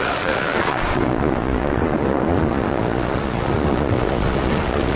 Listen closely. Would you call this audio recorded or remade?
remade